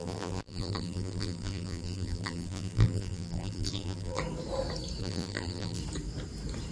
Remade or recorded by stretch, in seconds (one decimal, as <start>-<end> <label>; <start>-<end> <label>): 0.0-4.2 remade; 4.2-5.0 recorded; 5.0-5.8 remade; 5.8-6.7 recorded